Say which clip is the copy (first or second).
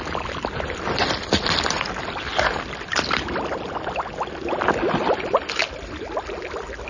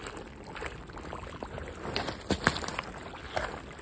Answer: first